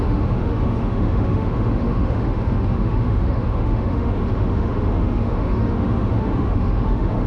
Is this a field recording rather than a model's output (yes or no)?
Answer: no